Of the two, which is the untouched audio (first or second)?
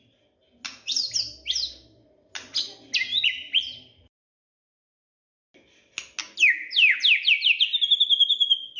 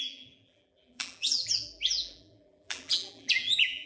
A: first